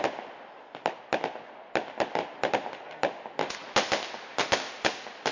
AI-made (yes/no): no